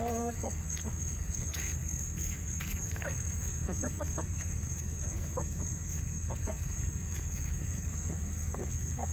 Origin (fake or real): fake